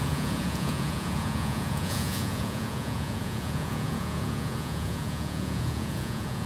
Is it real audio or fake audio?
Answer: fake